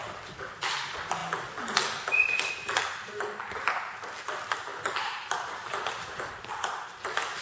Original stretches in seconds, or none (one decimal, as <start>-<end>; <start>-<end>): 0.0-4.7; 6.2-7.4